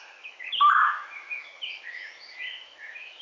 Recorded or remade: remade